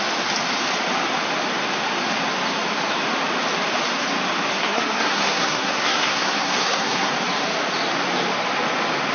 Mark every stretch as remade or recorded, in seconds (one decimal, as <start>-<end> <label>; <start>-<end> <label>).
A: 0.0-4.5 recorded; 4.5-7.1 remade; 7.1-9.1 recorded